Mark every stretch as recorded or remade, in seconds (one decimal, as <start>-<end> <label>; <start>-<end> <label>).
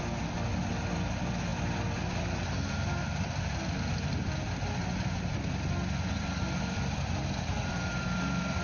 0.0-8.6 recorded